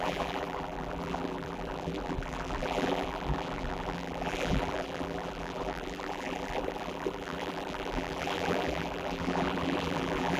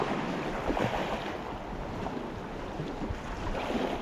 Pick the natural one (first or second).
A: second